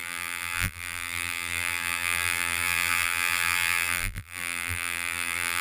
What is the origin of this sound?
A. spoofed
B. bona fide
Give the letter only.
A